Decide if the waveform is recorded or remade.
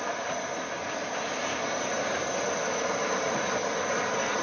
recorded